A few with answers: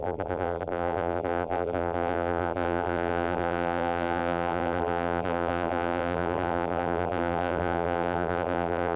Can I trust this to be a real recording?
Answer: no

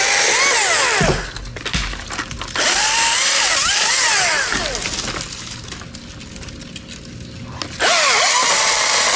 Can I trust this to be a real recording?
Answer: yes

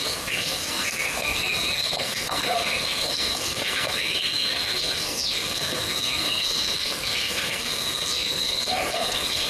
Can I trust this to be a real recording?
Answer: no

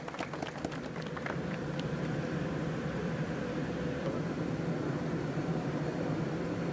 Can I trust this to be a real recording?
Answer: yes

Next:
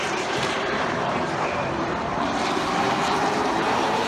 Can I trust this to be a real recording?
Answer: no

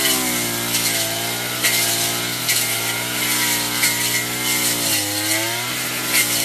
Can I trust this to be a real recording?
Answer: yes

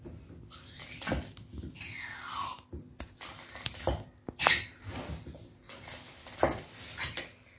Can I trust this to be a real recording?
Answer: yes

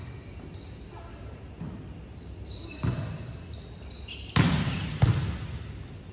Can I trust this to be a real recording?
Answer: yes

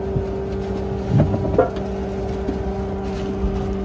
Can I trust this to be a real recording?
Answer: yes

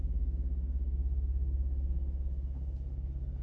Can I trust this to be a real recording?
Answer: yes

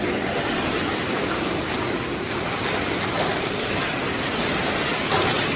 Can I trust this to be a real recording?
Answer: yes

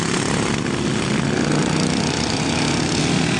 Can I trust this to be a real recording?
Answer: yes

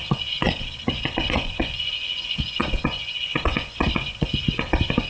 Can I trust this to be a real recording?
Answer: no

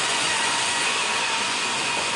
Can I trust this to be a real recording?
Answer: no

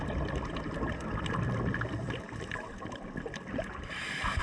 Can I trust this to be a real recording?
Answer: yes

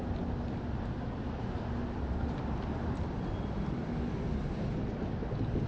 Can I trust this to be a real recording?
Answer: yes